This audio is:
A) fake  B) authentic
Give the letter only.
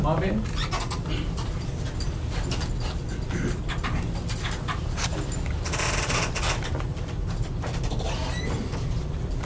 B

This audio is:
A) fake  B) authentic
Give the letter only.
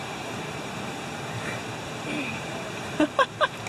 A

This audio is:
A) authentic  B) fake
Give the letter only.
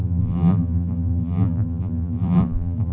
B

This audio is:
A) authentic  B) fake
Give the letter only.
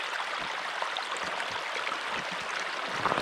A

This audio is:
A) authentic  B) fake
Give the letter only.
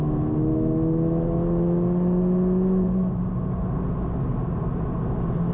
A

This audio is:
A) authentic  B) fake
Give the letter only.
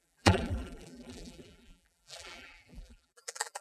B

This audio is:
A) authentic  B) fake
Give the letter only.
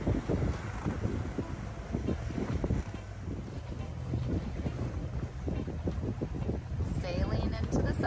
A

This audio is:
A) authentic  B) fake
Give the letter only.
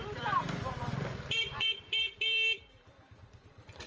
B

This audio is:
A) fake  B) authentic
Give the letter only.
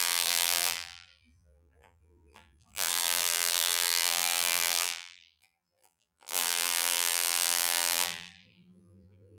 A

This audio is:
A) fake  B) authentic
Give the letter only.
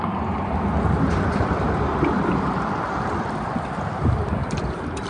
A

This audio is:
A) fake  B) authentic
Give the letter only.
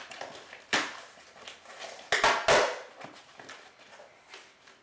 B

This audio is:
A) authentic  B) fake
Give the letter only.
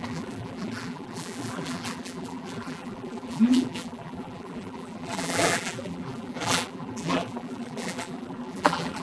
B